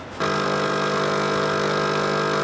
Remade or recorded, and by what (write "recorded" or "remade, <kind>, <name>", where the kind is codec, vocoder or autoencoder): recorded